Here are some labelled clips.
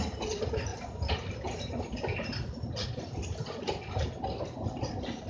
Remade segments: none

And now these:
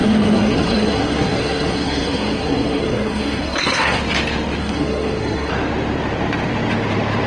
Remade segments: 0.0-4.0 (codec, SNAC); 4.6-5.5

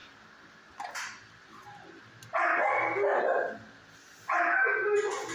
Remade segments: none

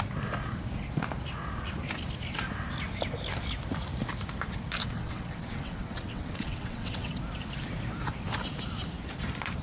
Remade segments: 4.8-7.2 (vocoder, WaveNeXt)